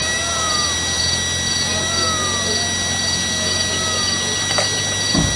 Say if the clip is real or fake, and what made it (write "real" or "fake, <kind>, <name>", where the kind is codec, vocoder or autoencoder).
real